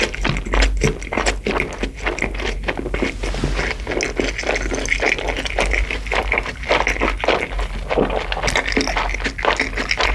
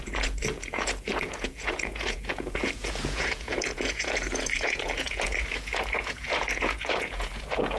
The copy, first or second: second